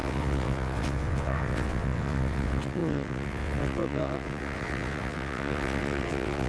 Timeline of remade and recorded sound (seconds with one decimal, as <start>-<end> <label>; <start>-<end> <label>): 0.0-6.5 remade